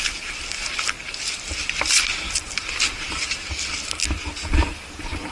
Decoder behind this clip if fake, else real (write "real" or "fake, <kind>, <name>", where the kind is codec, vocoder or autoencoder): real